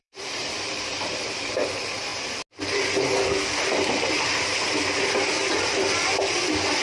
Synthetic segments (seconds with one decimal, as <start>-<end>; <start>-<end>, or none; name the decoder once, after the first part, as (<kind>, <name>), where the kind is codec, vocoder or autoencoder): 0.0-2.1 (vocoder, BigVGAN v2); 6.2-6.8

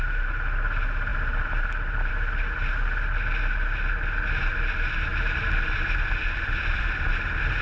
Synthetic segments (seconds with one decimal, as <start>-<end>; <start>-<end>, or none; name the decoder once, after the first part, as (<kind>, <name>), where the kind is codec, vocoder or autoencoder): 5.1-7.1 (vocoder, BigVGAN v2)

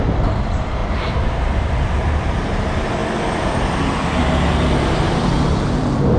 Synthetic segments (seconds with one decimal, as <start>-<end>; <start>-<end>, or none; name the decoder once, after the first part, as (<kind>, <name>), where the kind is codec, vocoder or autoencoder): 0.0-0.8 (vocoder, BigVGAN v2); 1.4-3.0; 4.9-6.2

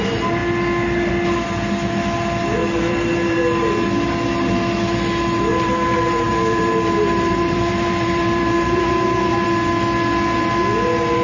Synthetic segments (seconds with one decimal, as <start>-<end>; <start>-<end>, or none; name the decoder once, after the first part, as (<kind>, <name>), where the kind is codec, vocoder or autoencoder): 2.6-3.4 (vocoder, BigVGAN v2); 5.5-9.3

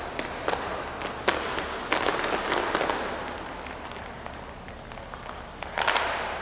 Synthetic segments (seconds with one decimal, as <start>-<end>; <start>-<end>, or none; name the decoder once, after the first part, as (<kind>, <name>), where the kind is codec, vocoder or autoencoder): none

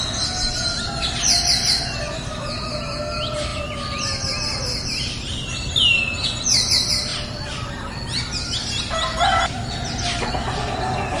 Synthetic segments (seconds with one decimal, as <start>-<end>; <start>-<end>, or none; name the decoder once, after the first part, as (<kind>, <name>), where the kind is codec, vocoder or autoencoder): 3.5-4.3 (vocoder, BigVGAN v2); 7.1-8.3

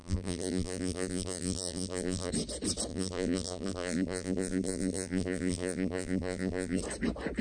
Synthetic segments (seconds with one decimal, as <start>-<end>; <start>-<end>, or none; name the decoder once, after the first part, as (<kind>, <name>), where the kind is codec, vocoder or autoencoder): 0.0-2.3 (vocoder, BigVGAN v2); 2.9-6.8